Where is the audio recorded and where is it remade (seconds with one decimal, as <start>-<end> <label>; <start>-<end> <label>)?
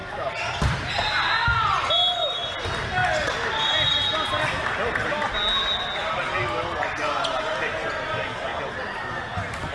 0.0-9.7 recorded